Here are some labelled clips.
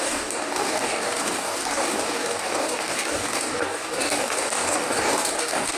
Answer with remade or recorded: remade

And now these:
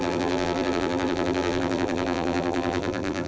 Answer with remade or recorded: remade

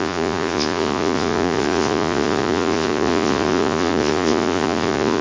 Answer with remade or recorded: remade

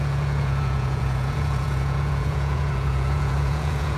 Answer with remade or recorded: remade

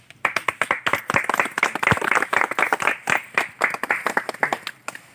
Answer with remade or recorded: recorded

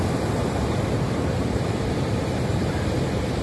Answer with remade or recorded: remade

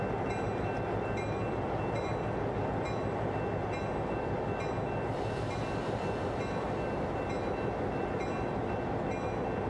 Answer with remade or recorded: recorded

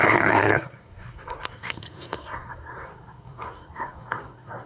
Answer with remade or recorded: remade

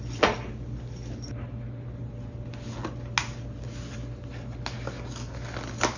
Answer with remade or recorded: recorded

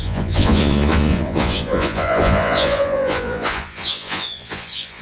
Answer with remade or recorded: remade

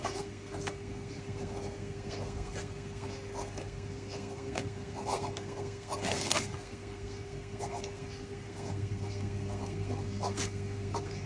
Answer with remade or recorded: remade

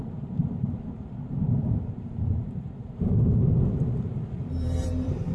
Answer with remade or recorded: remade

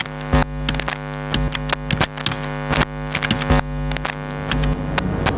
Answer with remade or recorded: recorded